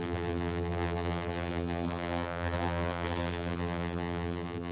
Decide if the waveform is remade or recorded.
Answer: remade